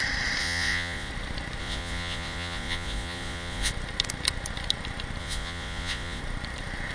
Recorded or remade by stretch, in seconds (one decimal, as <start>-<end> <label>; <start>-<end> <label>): 0.0-0.4 recorded; 0.4-1.1 remade; 1.1-1.6 recorded; 1.6-3.7 remade; 3.7-5.2 recorded; 5.2-6.2 remade; 6.2-6.9 recorded